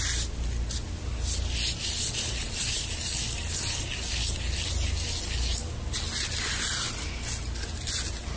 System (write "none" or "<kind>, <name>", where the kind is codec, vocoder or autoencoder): none